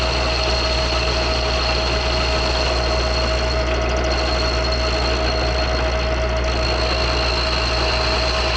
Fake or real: real